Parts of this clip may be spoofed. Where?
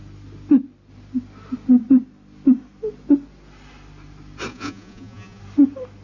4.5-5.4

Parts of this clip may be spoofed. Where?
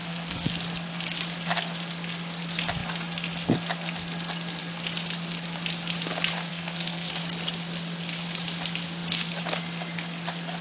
0.0-0.5; 6.5-7.1